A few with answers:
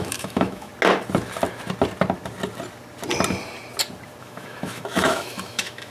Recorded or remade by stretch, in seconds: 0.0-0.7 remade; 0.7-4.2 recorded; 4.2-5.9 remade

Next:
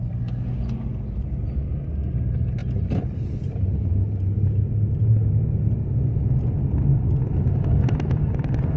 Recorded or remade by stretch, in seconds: 0.0-8.8 recorded

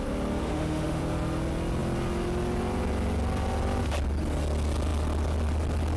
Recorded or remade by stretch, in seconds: 0.0-0.4 recorded; 0.4-1.0 remade; 1.0-6.0 recorded

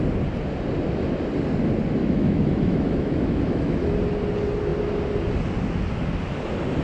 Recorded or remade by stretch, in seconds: 0.0-2.0 recorded; 2.0-3.9 remade; 3.9-6.8 recorded

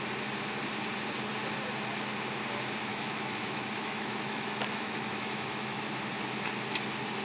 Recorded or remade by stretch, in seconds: 0.0-2.9 recorded; 2.9-5.8 remade; 5.8-7.2 recorded

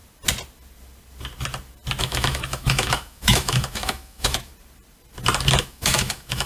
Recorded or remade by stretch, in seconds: 0.0-2.0 recorded; 2.0-4.5 remade; 4.5-5.6 recorded; 5.6-6.5 remade

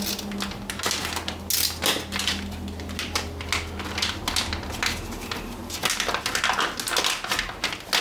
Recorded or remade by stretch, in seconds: 0.0-8.0 recorded

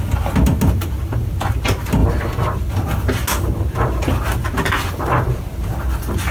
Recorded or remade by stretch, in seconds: 0.0-6.3 recorded